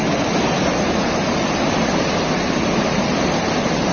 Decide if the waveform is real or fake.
real